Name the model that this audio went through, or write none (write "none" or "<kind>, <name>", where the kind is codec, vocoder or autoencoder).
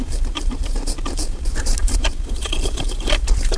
vocoder, BigVGAN v2